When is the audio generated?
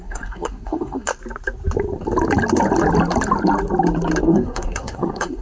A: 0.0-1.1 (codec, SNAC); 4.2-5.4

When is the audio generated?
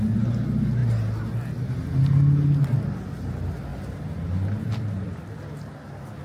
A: none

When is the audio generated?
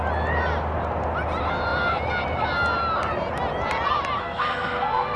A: 4.2-5.2 (codec, SNAC)